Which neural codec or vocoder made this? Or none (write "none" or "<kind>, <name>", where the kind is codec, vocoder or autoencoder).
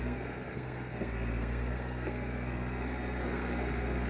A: codec, SNAC